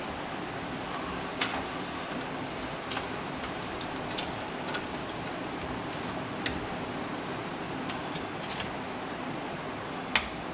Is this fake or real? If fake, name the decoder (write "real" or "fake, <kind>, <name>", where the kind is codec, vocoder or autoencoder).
real